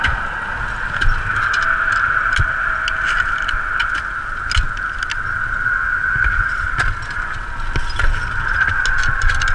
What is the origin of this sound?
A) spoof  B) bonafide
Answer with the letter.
B